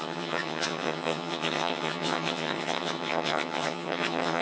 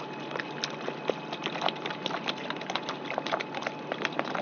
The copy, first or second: first